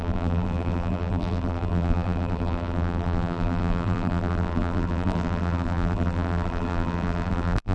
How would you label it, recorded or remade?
remade